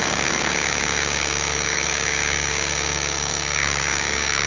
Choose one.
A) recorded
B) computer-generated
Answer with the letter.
B